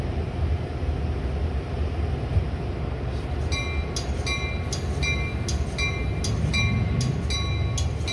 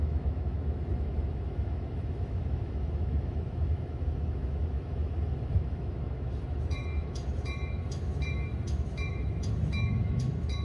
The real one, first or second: first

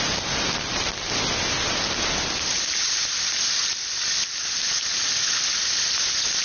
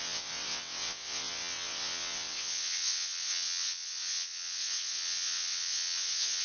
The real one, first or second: first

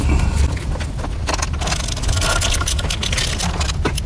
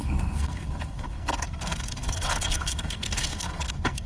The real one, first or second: first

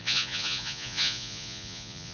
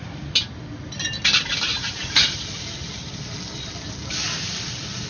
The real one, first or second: second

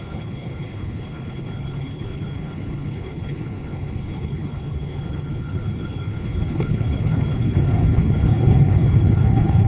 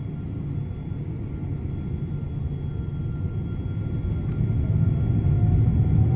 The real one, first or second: second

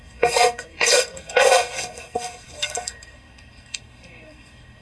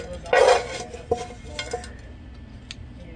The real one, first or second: second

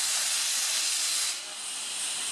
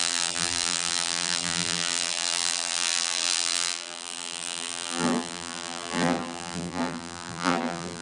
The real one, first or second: first